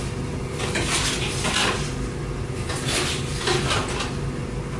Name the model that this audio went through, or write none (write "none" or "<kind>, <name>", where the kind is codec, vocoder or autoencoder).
none